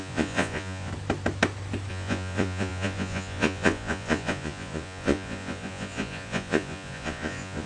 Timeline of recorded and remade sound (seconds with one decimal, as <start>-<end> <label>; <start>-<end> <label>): 0.0-0.9 remade; 0.9-1.9 recorded; 1.9-7.7 remade